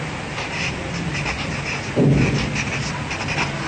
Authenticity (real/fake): real